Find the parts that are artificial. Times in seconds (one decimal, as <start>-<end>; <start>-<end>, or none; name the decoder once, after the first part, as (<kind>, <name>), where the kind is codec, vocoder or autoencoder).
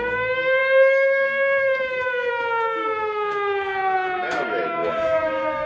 0.0-5.7 (autoencoder, DAC-VAE)